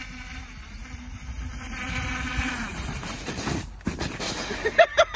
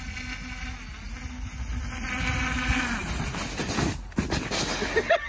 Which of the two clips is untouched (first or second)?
second